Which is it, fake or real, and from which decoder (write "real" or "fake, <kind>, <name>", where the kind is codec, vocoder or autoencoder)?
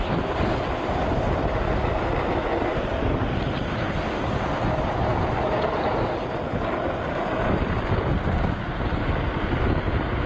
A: real